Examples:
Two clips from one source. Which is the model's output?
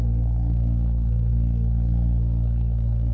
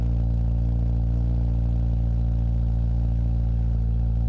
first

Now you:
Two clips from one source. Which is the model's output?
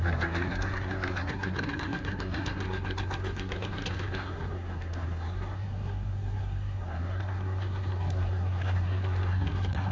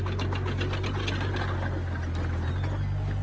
first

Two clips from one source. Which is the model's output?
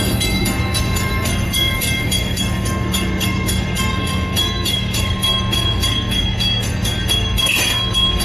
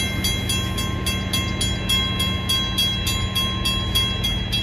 first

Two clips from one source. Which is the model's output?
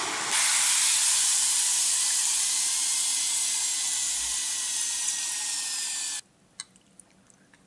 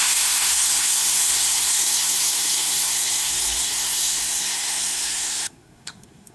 second